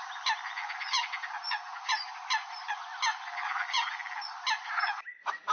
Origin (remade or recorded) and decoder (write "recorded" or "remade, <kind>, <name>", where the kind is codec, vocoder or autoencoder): recorded